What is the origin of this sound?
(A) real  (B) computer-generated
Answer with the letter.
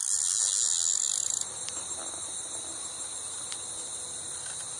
A